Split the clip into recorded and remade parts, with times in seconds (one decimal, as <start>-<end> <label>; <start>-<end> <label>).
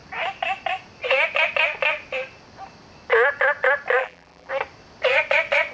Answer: 0.0-4.0 recorded; 4.0-4.5 remade; 4.5-5.7 recorded